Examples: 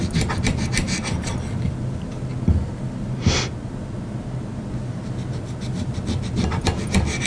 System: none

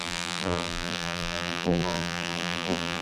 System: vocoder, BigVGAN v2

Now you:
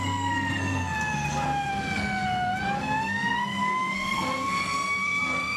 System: codec, SNAC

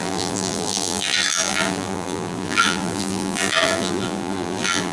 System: vocoder, BigVGAN v2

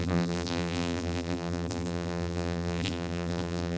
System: vocoder, BigVGAN v2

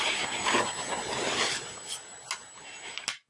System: none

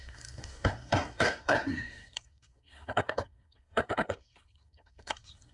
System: codec, SNAC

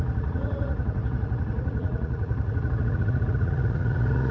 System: vocoder, Vocos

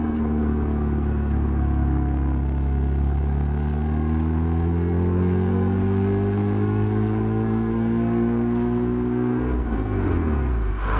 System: codec, SNAC